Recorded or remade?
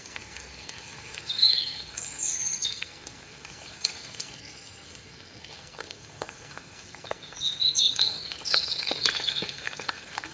remade